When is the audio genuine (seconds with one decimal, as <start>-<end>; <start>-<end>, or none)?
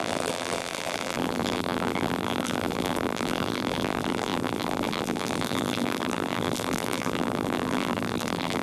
none